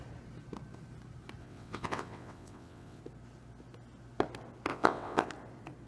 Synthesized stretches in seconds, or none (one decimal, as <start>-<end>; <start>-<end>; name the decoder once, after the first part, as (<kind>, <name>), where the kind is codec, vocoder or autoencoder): 1.4-3.0 (vocoder, WaveNeXt); 4.7-5.3